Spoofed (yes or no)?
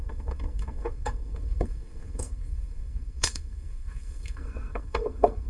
yes